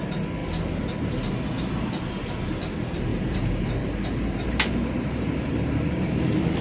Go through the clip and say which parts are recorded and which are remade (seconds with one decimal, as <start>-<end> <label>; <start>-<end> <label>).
0.0-3.1 recorded; 3.1-6.6 remade